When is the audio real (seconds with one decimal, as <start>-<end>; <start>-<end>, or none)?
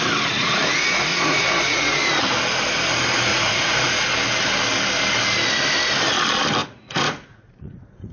0.0-0.4; 2.0-3.3; 4.0-6.6